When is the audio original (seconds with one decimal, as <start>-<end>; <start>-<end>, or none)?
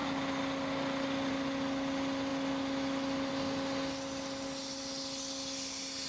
0.0-6.1